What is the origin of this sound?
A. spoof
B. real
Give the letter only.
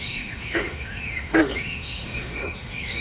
A